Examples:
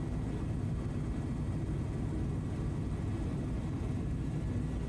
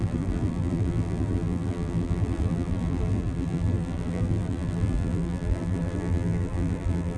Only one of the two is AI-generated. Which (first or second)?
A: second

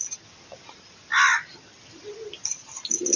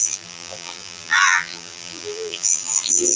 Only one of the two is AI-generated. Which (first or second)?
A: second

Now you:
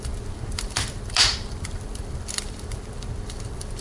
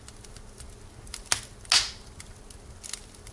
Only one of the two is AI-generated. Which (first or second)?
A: first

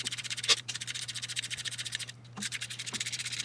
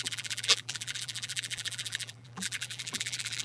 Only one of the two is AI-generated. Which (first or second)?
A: second